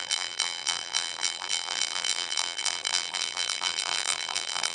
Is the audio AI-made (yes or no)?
yes